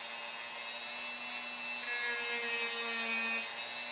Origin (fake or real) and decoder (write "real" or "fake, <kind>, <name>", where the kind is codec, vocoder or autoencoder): real